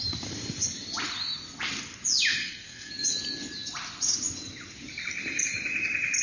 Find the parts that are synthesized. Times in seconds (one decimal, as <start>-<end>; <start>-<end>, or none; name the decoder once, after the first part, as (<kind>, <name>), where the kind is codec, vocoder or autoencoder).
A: 2.4-2.9 (codec, SNAC)